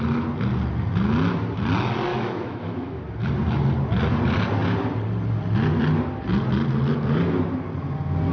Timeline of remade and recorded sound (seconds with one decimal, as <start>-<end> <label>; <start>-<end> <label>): 0.0-2.1 recorded; 2.1-3.0 remade; 3.0-8.3 recorded